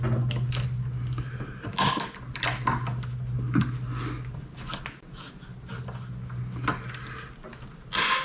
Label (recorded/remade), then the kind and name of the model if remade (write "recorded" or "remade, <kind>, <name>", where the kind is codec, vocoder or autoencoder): recorded